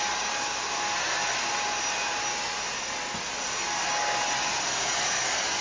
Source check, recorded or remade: recorded